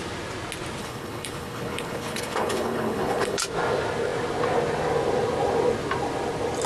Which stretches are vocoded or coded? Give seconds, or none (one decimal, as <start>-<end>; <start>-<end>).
0.8-3.4